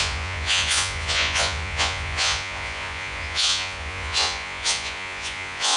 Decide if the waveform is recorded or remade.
remade